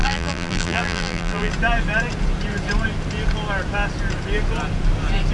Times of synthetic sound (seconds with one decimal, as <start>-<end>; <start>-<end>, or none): 0.0-1.5